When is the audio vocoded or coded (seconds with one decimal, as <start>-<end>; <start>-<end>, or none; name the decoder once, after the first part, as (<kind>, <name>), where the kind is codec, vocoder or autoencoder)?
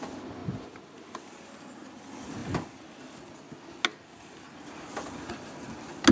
3.9-4.6 (vocoder, BigVGAN v2)